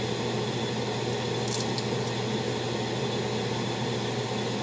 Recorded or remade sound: recorded